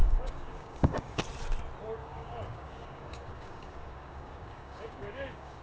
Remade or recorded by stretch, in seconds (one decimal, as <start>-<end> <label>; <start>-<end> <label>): 0.0-1.2 remade; 1.2-2.0 recorded; 2.0-5.6 remade